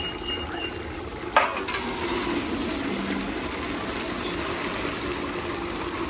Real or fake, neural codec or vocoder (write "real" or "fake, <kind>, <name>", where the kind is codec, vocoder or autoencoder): real